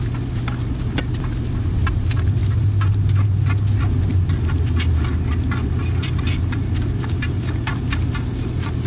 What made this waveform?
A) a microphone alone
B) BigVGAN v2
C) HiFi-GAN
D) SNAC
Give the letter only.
A